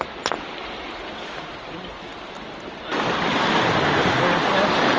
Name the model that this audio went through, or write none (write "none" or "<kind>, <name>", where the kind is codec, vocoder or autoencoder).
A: none